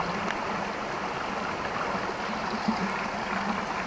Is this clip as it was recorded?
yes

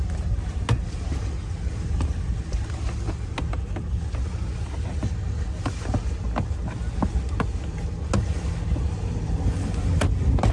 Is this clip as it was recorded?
yes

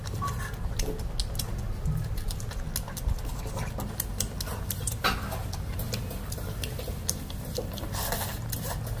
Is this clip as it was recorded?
yes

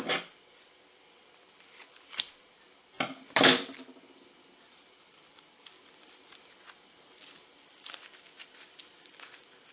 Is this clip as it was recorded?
yes